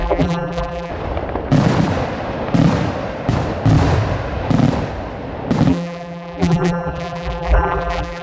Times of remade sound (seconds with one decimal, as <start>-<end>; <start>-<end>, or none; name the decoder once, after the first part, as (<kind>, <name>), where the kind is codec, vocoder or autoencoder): 0.0-0.9 (vocoder, BigVGAN v2); 5.7-8.2